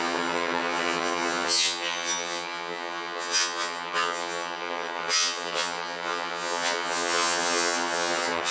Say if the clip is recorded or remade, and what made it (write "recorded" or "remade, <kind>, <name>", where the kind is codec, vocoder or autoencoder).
remade, vocoder, HiFi-GAN